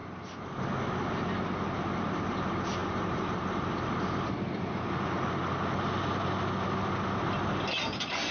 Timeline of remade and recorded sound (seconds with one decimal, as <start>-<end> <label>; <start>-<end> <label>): 0.0-2.8 recorded; 2.8-3.9 remade; 3.9-8.3 recorded